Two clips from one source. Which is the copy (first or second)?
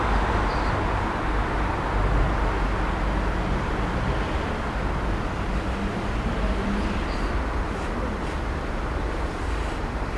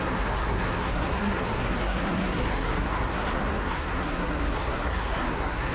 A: second